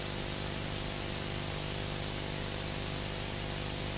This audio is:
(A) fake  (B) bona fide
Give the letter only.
B